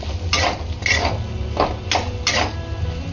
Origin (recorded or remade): recorded